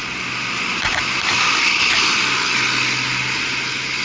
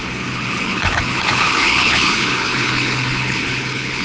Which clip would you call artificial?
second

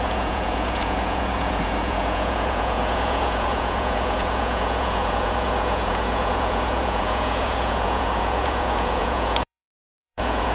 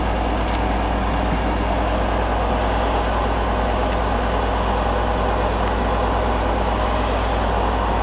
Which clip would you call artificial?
first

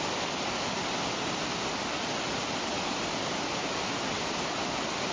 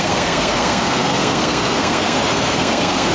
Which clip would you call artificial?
second